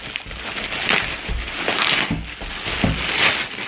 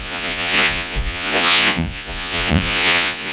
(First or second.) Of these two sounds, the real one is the first